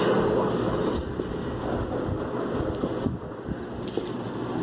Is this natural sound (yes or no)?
yes